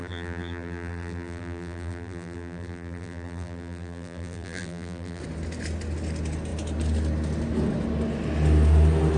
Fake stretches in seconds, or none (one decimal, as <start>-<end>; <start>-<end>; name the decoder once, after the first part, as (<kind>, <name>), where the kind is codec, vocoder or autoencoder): 0.0-5.2 (vocoder, BigVGAN v2)